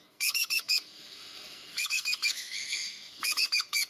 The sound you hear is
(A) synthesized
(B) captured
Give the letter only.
A